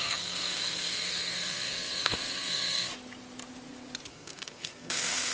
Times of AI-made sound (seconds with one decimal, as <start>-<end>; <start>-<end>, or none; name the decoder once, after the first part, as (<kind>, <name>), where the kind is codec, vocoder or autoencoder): 0.0-2.9 (codec, SNAC); 4.1-5.3